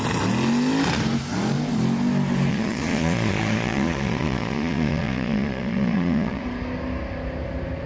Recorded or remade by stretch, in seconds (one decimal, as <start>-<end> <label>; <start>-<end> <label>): 0.0-2.5 recorded; 2.5-6.4 remade; 6.4-7.9 recorded